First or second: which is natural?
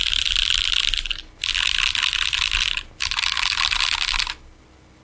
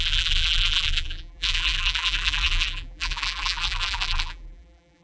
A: first